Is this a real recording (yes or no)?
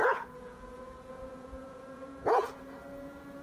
no